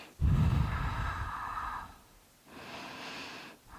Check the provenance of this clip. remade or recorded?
recorded